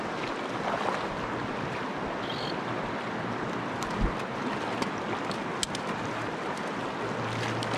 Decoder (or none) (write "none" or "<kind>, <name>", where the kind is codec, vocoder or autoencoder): none